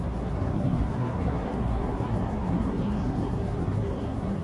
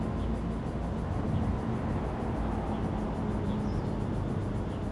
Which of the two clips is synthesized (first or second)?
first